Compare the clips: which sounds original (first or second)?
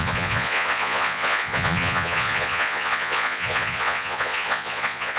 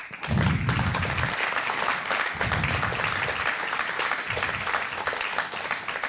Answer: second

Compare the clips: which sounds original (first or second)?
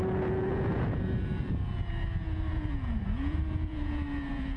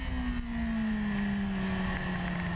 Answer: second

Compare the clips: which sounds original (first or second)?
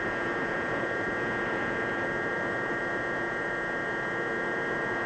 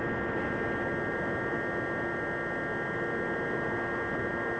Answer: second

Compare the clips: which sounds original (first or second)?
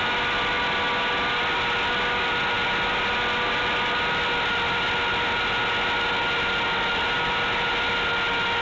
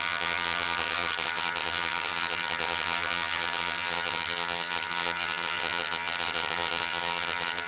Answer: first